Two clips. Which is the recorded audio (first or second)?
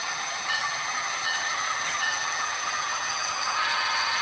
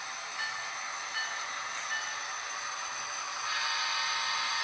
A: second